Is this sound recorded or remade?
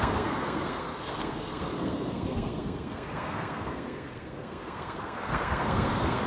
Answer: remade